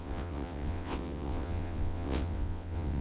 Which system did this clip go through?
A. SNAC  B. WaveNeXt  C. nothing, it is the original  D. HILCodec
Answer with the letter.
B